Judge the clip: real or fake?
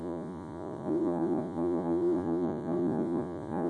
fake